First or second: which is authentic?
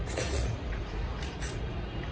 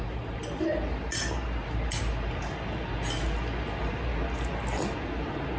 second